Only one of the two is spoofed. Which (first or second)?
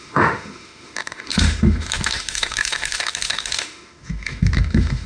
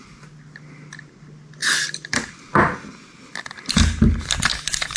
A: first